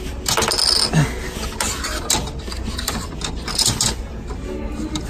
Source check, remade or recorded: recorded